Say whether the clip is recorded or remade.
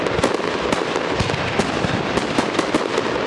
recorded